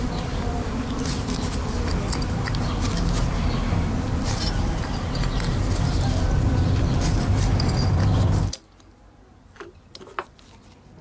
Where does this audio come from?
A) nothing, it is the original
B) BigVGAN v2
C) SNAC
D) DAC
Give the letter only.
A